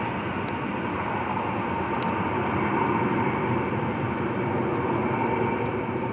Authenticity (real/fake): real